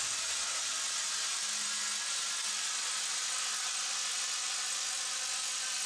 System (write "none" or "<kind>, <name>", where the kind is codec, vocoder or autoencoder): none